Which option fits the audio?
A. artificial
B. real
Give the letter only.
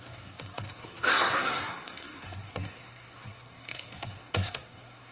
A